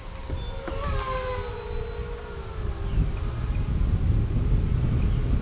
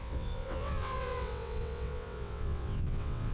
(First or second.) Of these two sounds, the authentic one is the first